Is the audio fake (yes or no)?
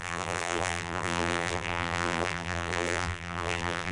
yes